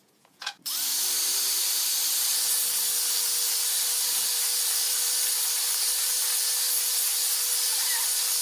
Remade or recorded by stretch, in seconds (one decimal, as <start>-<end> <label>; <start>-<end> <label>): 0.0-0.6 remade; 0.6-8.4 recorded